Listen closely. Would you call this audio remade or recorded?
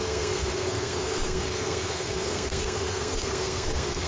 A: remade